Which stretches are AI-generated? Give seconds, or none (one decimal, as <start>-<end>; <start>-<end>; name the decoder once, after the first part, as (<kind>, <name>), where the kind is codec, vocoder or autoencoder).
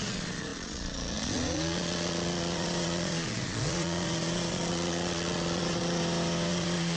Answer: 0.0-6.0 (vocoder, Vocos); 6.5-7.0